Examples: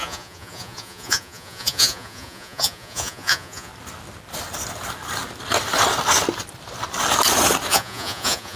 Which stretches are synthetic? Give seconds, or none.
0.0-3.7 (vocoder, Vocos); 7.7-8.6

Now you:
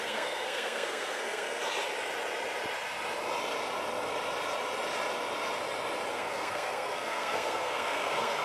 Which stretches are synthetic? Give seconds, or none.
0.0-1.6 (codec, SNAC); 6.1-8.4

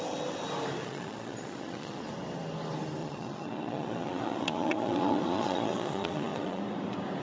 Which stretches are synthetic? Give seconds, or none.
0.8-2.1 (vocoder, Vocos); 3.0-6.6

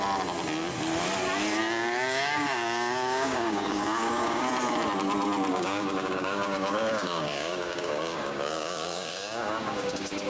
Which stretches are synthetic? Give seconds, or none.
1.6-4.5 (codec, DAC); 5.5-10.3

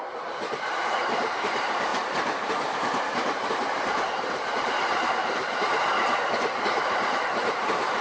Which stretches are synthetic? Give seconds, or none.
0.0-3.6 (vocoder, BigVGAN v2); 6.9-8.0

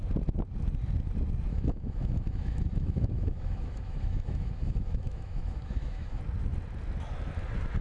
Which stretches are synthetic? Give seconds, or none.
1.5-6.2 (autoencoder, DAC-VAE)